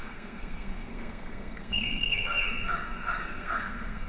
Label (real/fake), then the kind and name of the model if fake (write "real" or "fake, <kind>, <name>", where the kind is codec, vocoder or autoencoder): fake, codec, SNAC